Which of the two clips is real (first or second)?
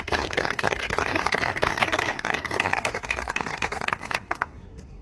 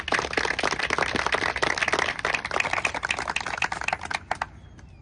second